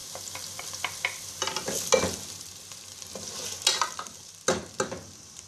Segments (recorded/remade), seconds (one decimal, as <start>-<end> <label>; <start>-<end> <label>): 0.0-5.5 recorded